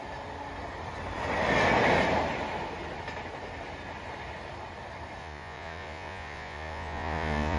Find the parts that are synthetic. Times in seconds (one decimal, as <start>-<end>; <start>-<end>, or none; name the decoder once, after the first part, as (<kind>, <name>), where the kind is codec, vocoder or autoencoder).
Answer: 5.2-7.6 (vocoder, Vocos)